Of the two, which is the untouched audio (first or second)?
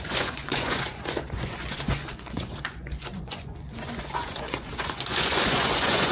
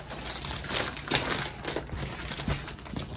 second